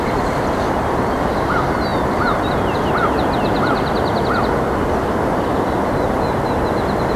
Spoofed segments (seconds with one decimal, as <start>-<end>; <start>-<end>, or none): none